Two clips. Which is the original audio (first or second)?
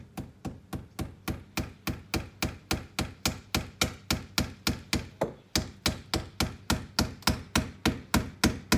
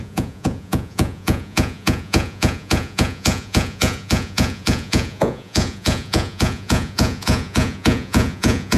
first